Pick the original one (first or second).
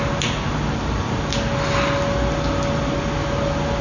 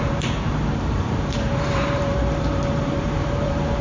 first